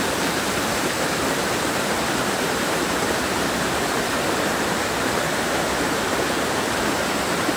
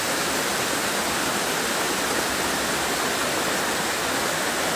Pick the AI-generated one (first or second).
first